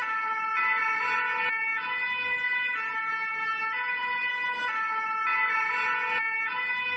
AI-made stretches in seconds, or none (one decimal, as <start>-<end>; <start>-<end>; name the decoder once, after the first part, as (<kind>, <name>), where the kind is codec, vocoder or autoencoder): none